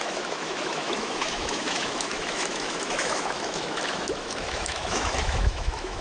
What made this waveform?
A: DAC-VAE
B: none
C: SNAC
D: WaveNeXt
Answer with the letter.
A